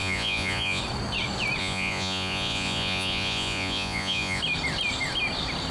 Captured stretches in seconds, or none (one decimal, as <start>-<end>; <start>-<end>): 0.8-1.6; 4.4-5.7